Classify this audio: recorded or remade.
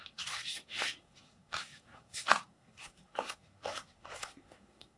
remade